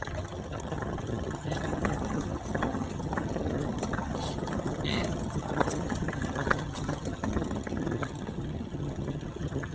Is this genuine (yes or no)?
no